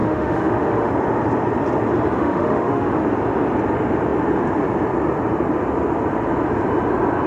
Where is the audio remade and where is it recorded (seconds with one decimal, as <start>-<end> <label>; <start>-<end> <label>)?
0.0-0.9 remade; 0.9-2.2 recorded; 2.2-3.0 remade; 3.0-7.3 recorded